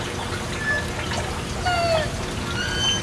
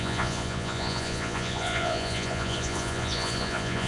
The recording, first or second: first